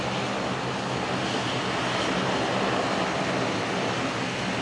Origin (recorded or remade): recorded